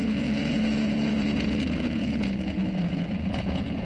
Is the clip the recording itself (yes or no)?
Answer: no